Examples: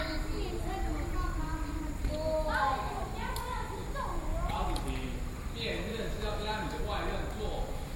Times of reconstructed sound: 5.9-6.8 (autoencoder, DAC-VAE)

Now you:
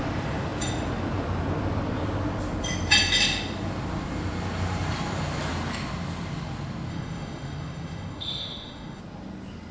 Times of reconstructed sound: 6.9-9.0 (autoencoder, DAC-VAE)

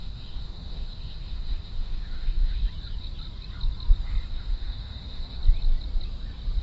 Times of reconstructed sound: 0.0-2.6 (autoencoder, DAC-VAE); 4.3-5.4

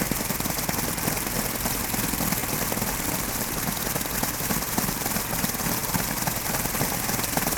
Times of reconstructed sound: none

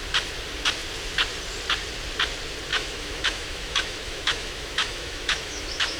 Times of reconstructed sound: 2.7-6.0 (autoencoder, DAC-VAE)

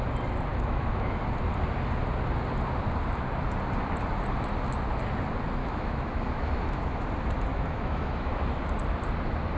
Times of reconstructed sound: 0.5-1.2 (autoencoder, DAC-VAE); 5.6-7.1; 7.5-8.3

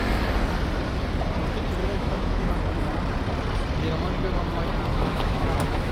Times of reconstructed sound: 1.8-2.5 (autoencoder, DAC-VAE); 4.9-5.9

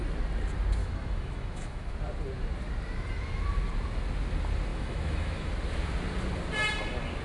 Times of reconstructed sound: 0.8-1.9 (autoencoder, DAC-VAE); 4.7-5.5